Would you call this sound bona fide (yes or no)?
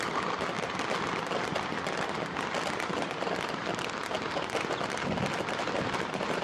yes